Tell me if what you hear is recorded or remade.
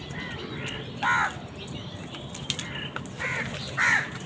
recorded